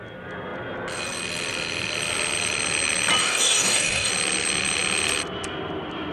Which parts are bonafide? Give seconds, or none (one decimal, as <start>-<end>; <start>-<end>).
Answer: 0.0-3.2; 4.1-6.1